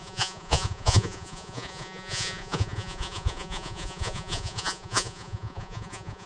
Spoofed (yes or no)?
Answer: yes